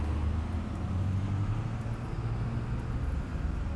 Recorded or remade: recorded